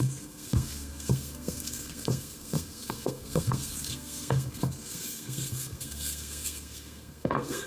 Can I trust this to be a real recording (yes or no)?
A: no